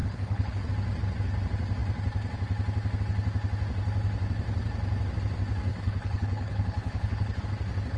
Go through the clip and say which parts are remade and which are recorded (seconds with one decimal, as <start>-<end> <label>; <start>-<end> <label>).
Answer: 0.0-0.7 remade; 0.7-5.7 recorded; 5.7-7.4 remade; 7.4-8.0 recorded